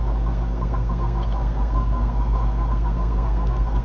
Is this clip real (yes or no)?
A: no